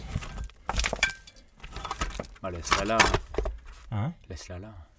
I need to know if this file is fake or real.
real